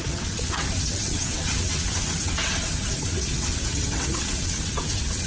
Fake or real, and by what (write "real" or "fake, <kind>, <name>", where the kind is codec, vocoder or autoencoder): fake, vocoder, WaveNeXt